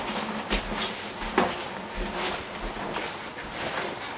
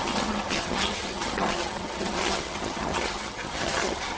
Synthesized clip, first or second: second